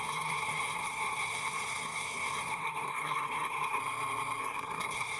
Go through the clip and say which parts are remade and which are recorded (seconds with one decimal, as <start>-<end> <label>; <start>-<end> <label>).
0.0-3.8 remade; 3.8-4.4 recorded; 4.4-5.2 remade